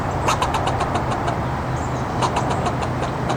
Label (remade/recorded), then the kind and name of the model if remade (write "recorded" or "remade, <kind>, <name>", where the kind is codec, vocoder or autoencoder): recorded